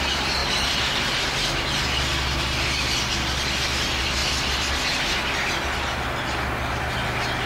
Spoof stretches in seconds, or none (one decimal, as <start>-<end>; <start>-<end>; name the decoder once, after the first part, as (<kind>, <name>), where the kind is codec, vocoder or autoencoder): none